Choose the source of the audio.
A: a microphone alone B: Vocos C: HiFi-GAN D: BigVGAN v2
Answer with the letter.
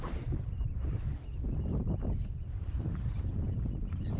D